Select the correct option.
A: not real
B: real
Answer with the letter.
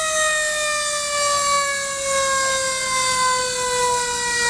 B